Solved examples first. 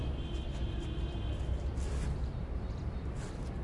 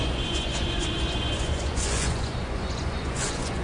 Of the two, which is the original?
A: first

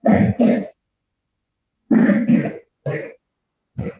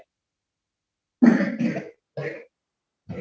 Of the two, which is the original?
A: second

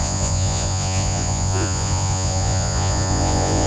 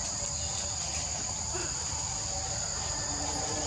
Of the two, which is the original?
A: second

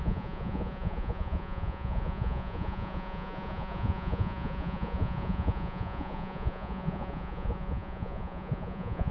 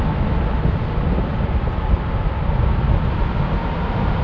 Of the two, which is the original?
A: second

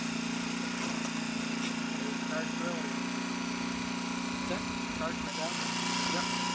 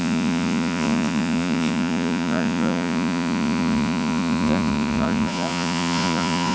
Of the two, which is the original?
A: first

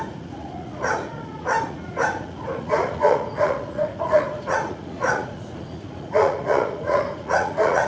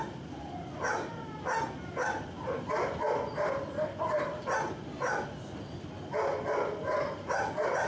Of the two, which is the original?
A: second